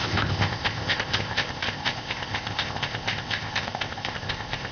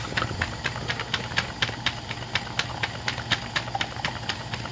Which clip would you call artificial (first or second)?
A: first